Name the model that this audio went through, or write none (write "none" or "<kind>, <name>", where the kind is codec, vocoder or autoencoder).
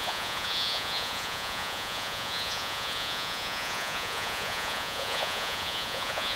vocoder, Vocos